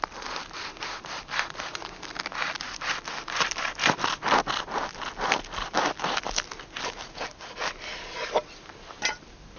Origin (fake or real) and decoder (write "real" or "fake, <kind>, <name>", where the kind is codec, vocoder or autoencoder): real